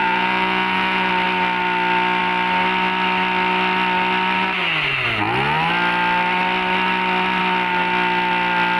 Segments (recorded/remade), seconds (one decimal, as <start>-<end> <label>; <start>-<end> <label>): 0.0-1.1 remade; 1.1-8.8 recorded